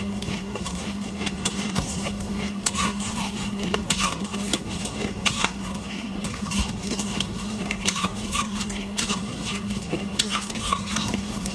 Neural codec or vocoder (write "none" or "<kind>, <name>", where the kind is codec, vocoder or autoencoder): codec, SNAC